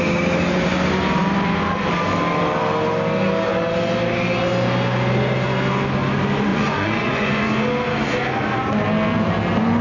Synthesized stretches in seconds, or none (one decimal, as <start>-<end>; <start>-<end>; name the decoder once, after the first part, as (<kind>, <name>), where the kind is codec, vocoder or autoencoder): 6.5-7.4 (vocoder, Vocos)